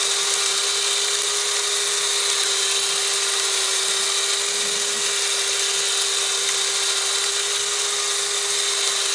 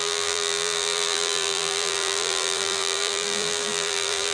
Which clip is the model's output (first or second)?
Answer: second